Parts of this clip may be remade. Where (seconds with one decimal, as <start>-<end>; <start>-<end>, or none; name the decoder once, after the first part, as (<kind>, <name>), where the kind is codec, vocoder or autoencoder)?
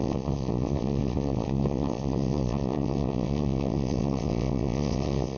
0.0-5.4 (vocoder, WaveNeXt)